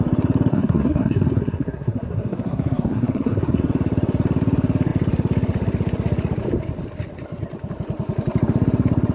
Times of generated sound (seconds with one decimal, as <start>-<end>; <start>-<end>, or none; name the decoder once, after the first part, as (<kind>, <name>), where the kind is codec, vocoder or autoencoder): 0.5-3.6 (codec, SNAC)